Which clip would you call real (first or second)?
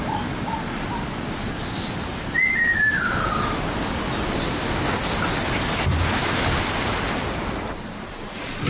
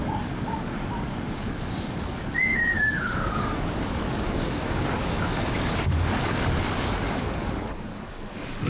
first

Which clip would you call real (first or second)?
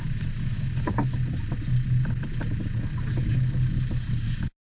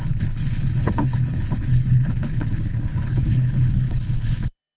first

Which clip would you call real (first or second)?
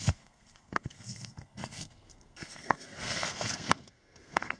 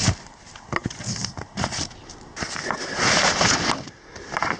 second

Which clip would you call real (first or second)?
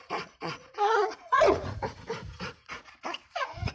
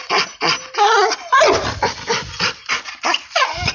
second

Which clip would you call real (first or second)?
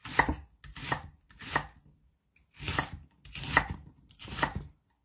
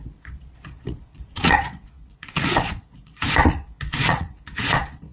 first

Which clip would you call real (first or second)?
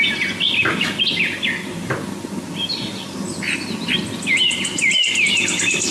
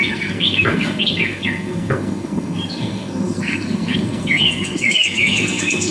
first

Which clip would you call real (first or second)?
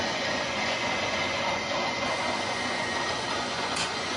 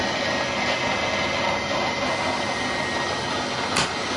second